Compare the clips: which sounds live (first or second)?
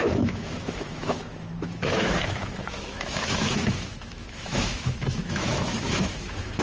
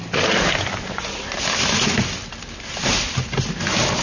second